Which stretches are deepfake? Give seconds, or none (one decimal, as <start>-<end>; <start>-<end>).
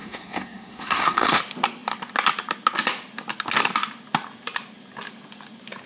0.0-1.4